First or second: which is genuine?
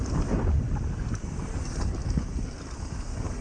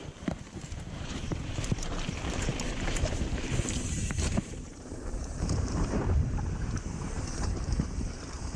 first